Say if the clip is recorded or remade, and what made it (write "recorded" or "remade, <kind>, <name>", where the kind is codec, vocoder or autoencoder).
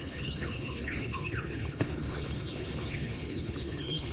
remade, codec, HILCodec